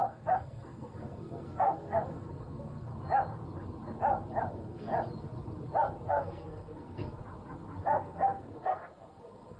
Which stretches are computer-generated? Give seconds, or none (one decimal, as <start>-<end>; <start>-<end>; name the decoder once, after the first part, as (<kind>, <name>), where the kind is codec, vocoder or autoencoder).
0.0-2.9 (codec, SNAC); 4.5-4.9; 6.1-7.2; 7.8-9.6